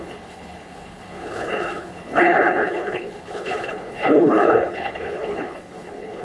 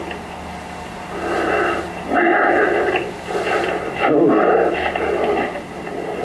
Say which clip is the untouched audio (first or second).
second